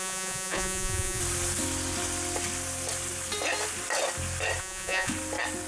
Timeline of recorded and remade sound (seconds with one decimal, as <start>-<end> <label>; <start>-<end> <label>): 0.0-1.2 remade; 1.2-4.6 recorded; 4.6-5.1 remade; 5.1-5.7 recorded